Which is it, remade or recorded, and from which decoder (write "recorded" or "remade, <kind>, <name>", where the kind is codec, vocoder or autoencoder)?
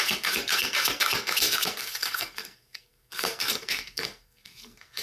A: remade, codec, SNAC